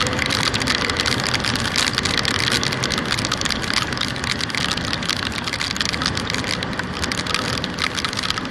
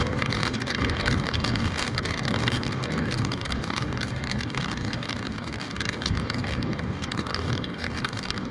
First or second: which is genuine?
first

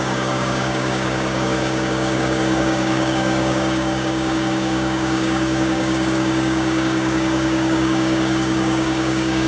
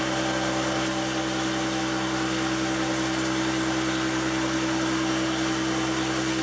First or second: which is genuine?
second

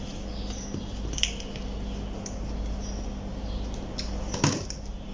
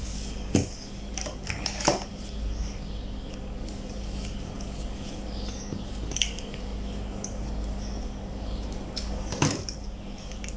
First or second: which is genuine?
first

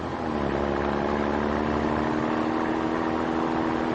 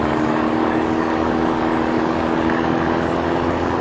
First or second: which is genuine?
first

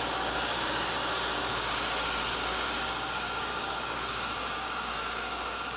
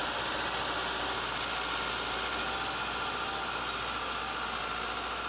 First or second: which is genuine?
second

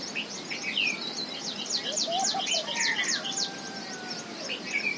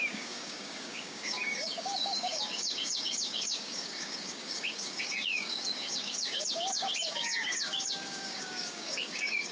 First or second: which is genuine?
first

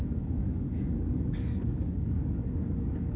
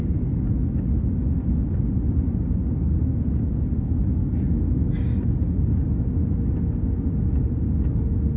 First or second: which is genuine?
second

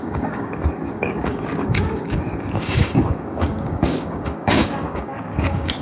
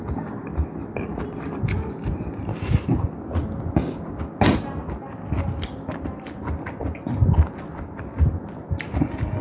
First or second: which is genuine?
second